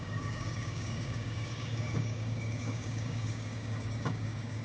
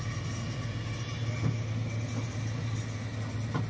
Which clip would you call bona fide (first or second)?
second